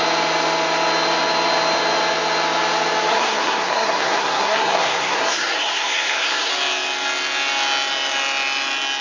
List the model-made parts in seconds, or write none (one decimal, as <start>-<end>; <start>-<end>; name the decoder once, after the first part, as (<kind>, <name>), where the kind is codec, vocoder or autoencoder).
3.1-6.5 (codec, SNAC)